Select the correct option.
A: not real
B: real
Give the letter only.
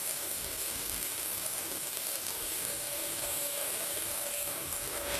A